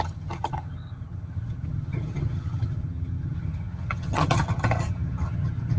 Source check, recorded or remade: remade